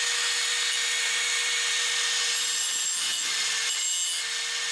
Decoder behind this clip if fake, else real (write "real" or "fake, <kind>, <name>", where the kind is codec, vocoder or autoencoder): real